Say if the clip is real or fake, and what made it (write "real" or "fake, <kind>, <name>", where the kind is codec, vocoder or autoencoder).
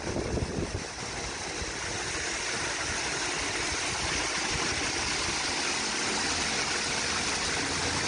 real